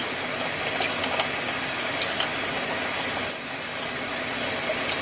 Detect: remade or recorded recorded